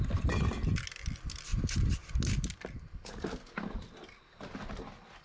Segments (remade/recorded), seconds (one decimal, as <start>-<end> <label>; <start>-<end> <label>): 0.0-5.2 recorded